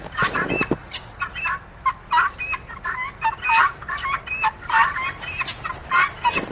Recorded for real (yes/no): yes